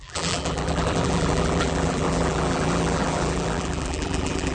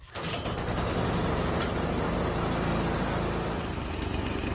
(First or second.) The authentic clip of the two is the second